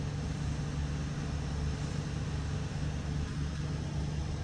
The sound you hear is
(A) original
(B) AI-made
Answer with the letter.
A